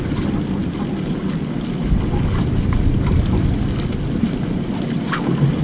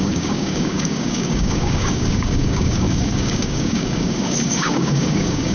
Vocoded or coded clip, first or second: second